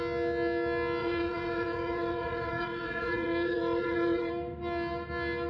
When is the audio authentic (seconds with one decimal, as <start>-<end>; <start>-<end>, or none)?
0.0-1.0; 4.3-5.5